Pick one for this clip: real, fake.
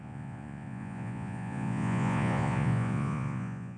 fake